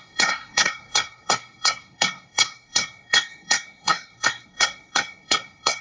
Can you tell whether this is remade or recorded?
remade